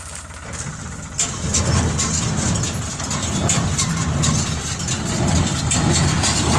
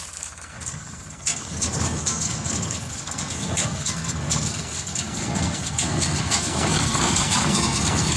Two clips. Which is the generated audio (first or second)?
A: second